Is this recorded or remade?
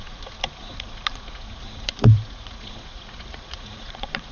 remade